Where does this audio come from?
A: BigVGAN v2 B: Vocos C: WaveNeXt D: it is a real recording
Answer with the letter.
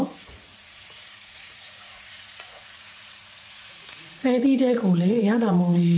B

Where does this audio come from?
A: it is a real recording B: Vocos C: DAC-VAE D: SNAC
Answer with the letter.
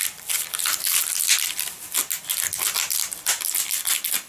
A